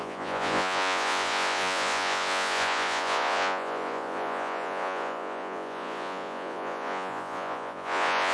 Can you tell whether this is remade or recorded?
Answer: remade